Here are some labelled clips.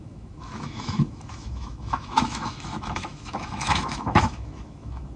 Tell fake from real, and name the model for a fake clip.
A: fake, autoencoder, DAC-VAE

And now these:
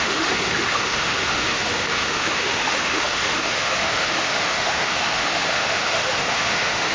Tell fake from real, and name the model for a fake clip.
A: fake, autoencoder, DAC-VAE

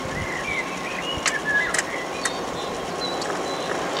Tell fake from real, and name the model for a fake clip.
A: real